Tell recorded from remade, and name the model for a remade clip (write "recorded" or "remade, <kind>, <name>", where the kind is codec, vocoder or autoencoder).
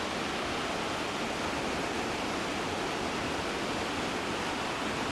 recorded